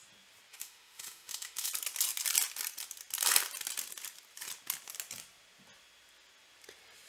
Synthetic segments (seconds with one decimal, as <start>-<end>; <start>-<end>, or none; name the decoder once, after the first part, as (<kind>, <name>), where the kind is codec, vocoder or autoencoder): 0.5-1.7 (autoencoder, DAC-VAE)